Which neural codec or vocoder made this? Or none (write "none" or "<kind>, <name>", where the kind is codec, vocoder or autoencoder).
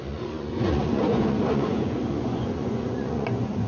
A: vocoder, Vocos